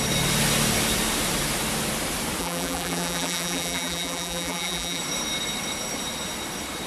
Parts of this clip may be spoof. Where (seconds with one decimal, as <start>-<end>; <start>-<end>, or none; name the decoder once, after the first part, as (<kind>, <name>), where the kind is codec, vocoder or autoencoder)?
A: 2.4-5.0 (vocoder, BigVGAN v2)